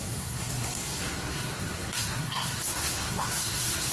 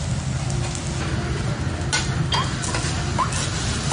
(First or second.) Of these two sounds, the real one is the second